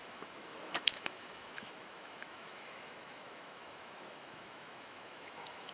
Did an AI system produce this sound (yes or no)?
yes